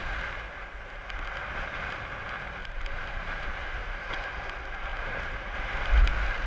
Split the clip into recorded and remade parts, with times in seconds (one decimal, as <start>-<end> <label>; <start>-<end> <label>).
0.0-2.6 recorded; 2.6-4.1 remade; 4.1-4.9 recorded; 4.9-5.7 remade; 5.7-6.5 recorded